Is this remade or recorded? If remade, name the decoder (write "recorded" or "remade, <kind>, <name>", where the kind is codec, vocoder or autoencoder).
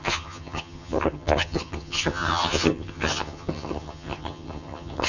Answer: remade, vocoder, HiFi-GAN